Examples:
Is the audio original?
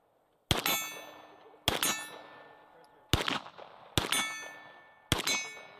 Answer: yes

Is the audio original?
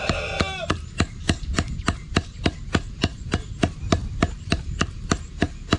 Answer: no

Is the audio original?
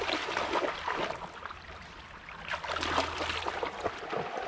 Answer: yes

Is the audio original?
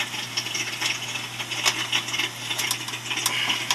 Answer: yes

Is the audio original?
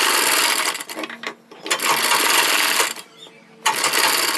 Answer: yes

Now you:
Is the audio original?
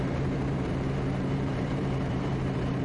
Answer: no